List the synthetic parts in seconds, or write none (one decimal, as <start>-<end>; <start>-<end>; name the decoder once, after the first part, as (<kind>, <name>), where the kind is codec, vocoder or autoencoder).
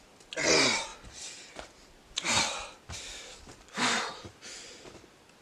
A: none